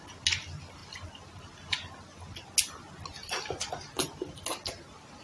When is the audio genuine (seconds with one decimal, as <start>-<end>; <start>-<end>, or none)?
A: 0.0-5.2